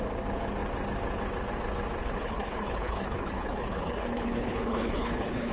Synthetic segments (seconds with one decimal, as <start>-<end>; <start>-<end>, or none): 2.0-5.5